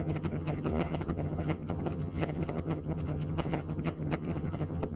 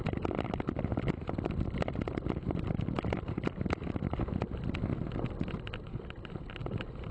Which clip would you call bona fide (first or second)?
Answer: second